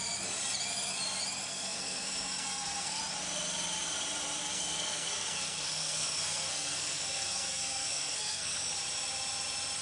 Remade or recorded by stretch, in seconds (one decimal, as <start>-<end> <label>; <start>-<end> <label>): 0.0-1.5 recorded; 1.5-3.0 remade; 3.0-4.4 recorded; 4.4-8.7 remade; 8.7-9.8 recorded

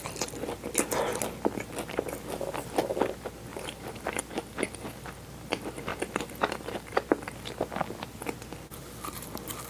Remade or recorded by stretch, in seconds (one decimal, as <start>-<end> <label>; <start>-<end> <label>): 0.0-3.5 recorded; 3.5-4.2 remade; 4.2-9.7 recorded